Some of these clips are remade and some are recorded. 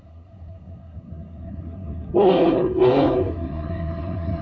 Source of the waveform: remade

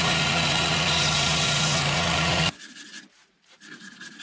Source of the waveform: remade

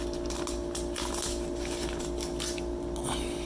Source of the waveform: recorded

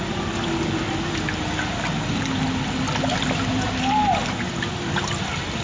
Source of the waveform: remade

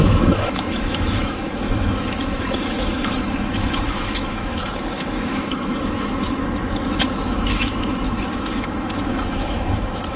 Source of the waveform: remade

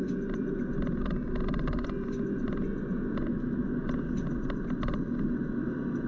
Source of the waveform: recorded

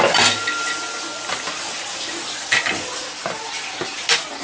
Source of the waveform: recorded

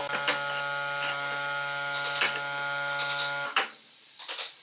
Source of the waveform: recorded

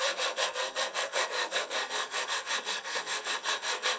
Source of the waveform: remade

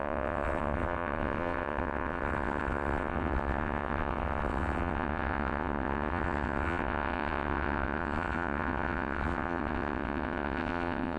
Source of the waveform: remade